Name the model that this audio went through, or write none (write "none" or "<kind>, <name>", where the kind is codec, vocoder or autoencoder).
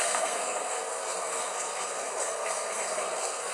codec, SNAC